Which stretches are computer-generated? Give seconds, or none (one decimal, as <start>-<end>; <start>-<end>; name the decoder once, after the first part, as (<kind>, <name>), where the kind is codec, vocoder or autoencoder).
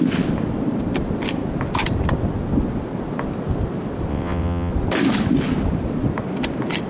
4.1-4.7 (vocoder, WaveNeXt)